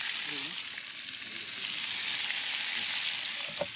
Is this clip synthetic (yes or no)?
no